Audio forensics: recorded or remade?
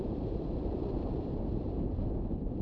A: recorded